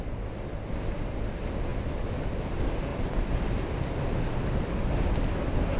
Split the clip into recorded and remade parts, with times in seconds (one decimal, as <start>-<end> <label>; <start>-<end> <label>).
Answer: 0.0-1.7 recorded; 1.7-2.3 remade; 2.3-2.9 recorded; 2.9-5.1 remade; 5.1-5.8 recorded